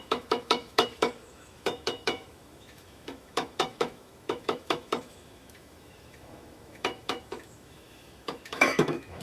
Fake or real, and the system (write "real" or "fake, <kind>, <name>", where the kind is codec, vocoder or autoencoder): fake, autoencoder, DAC-VAE